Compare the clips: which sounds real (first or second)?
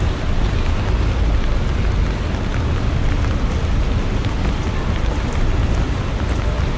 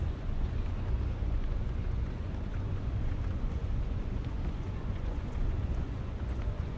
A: first